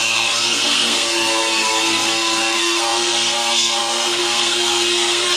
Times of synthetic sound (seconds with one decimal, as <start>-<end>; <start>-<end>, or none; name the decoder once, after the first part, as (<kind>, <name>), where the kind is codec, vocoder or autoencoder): 0.0-5.4 (codec, SNAC)